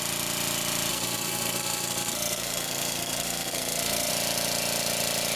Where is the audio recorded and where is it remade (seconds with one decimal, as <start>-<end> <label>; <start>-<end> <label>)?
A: 0.0-0.9 recorded; 0.9-4.1 remade; 4.1-5.4 recorded